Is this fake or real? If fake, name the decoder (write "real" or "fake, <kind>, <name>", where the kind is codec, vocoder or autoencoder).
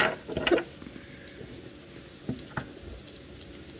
real